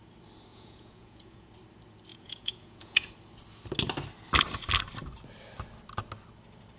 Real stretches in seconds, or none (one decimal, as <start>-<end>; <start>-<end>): 0.0-0.5; 1.5-2.1; 3.1-6.8